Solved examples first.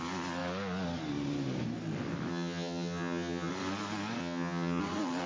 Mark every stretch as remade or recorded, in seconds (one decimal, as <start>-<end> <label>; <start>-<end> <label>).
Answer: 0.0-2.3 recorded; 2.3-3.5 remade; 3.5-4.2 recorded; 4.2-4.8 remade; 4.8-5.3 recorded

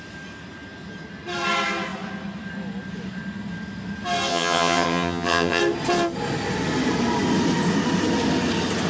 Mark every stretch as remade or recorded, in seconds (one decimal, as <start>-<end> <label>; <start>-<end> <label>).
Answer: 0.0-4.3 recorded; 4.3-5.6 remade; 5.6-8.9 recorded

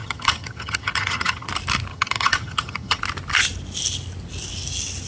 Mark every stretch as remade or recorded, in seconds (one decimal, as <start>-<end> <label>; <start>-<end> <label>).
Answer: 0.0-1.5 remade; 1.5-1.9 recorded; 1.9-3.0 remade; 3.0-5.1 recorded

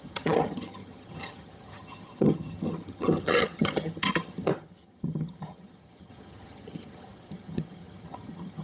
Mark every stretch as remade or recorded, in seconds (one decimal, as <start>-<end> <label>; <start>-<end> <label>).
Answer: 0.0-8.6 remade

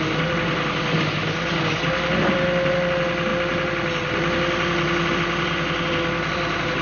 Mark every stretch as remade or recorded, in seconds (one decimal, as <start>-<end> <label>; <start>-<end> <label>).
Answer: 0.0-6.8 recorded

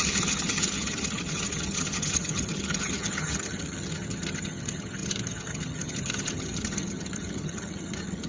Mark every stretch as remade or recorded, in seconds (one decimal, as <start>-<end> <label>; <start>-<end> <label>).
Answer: 0.0-8.3 remade